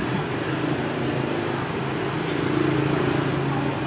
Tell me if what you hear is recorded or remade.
recorded